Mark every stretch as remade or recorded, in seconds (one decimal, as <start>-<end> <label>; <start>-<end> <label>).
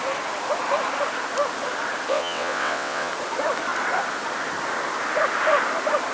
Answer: 0.0-2.1 recorded; 2.1-3.1 remade; 3.1-6.1 recorded